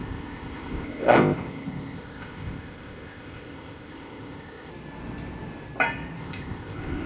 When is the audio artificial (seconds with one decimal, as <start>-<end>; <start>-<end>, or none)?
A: 0.0-4.7; 6.2-7.1